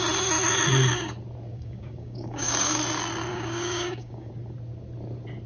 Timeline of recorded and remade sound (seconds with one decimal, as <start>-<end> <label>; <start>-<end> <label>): 0.0-1.5 recorded; 1.5-2.8 remade; 2.8-3.3 recorded; 3.3-4.3 remade; 4.3-5.5 recorded